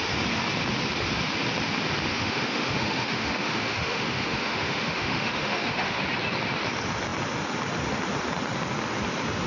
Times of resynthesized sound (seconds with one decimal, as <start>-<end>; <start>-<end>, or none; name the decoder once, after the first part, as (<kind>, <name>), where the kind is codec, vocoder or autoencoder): 2.1-6.0 (autoencoder, DAC-VAE)